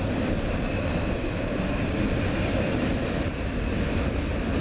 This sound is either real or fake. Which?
fake